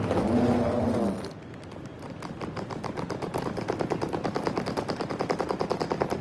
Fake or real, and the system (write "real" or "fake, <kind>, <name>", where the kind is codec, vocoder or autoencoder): real